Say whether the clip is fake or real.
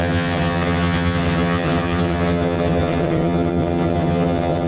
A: fake